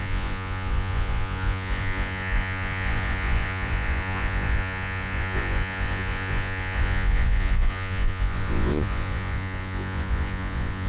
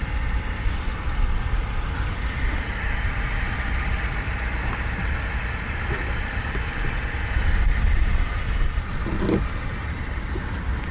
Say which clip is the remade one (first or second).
first